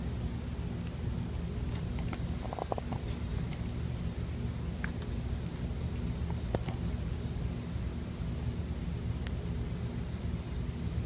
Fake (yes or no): no